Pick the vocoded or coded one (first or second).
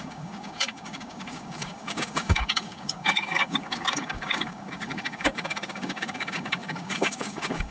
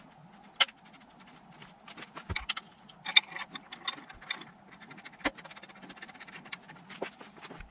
first